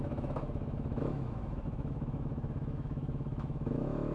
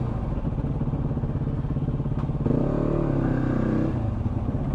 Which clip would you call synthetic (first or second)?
first